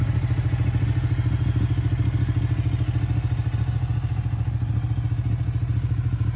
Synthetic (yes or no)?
no